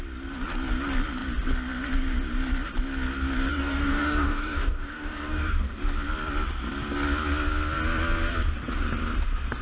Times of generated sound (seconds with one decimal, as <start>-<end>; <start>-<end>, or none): 3.5-5.8